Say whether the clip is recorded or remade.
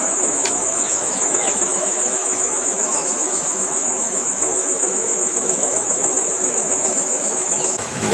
remade